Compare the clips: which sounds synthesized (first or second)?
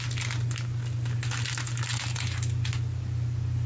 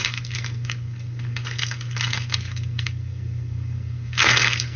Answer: second